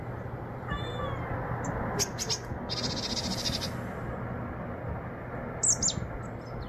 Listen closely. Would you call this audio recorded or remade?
recorded